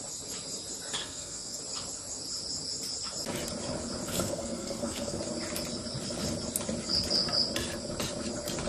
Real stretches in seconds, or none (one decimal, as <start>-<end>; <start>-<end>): 0.0-1.0; 1.6-4.1; 5.2-8.7